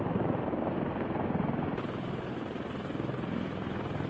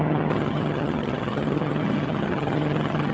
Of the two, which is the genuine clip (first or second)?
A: first